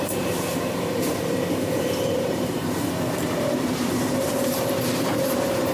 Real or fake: fake